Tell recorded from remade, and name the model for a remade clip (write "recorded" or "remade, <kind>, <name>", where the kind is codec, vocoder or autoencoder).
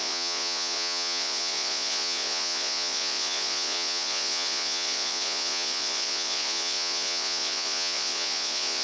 remade, vocoder, Vocos